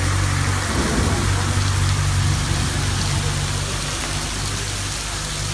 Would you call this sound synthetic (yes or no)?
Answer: no